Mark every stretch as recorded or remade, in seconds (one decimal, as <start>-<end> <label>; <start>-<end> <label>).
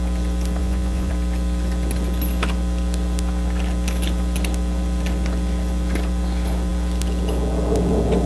0.0-0.6 recorded; 0.6-1.1 remade; 1.1-8.3 recorded